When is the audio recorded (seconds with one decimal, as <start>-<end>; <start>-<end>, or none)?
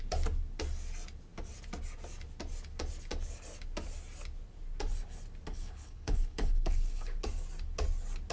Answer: 0.0-5.5; 7.2-8.3